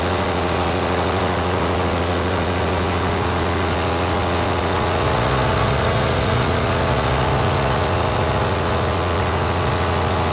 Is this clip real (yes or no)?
no